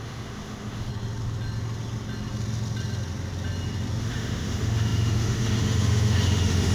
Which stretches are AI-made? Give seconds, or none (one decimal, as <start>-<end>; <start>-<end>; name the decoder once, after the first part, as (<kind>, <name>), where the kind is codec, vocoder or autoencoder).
0.0-0.9 (autoencoder, DAC-VAE); 4.0-6.7